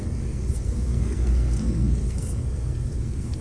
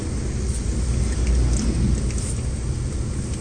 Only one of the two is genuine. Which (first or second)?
second